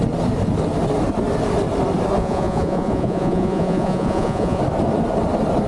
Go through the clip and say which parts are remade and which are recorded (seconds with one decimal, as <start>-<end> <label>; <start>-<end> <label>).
0.0-2.2 recorded; 2.2-4.6 remade; 4.6-5.7 recorded